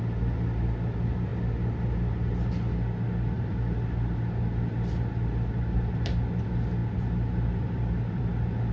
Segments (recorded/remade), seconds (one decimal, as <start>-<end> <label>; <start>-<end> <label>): 0.0-1.3 remade; 1.3-3.1 recorded; 3.1-8.7 remade